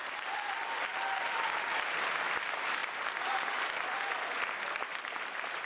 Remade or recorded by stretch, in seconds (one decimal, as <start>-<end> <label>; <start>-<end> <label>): 0.0-5.7 recorded